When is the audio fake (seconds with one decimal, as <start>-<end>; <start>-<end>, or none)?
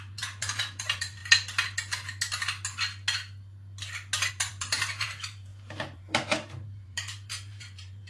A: 0.0-1.2; 4.3-8.1